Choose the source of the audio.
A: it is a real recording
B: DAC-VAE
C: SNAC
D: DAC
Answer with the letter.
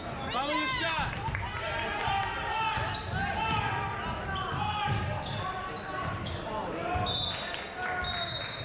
A